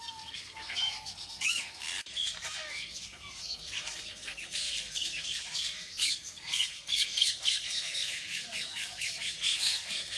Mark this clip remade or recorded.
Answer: remade